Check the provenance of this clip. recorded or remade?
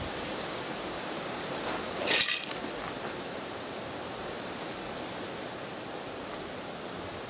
recorded